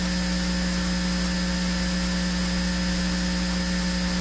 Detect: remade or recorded recorded